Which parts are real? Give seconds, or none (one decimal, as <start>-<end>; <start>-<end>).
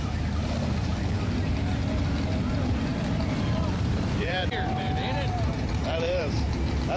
0.0-0.9; 1.5-2.9; 6.5-7.0